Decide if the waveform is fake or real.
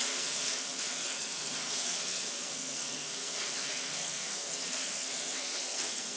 fake